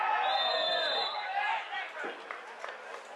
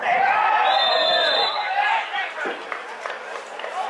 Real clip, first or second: first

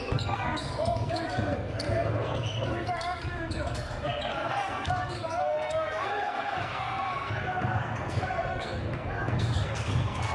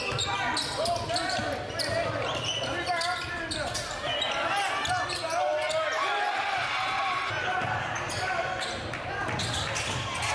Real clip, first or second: second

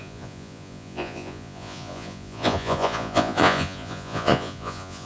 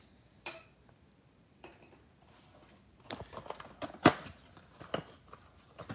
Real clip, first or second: second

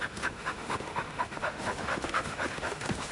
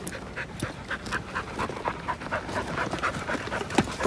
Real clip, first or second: second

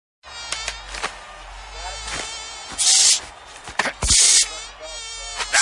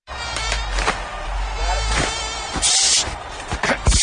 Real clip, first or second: first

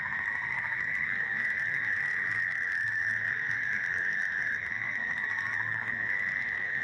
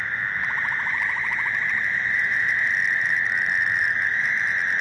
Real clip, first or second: second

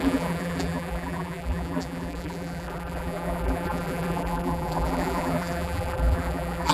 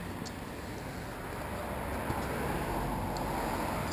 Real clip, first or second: second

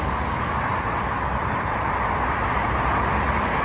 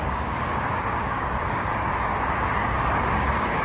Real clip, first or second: first